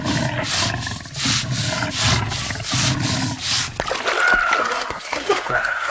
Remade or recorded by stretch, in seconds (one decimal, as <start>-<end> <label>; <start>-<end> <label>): 0.0-4.6 recorded; 4.6-5.9 remade